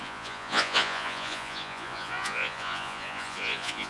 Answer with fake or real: fake